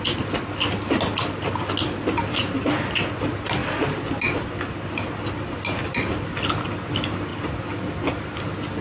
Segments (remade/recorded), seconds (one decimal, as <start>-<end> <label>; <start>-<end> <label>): 0.0-8.8 recorded